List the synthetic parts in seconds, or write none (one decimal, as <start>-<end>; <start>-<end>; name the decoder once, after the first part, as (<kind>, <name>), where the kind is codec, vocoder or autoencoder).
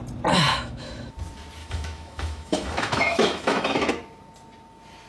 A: 0.5-1.1 (autoencoder, DAC-VAE); 1.6-3.9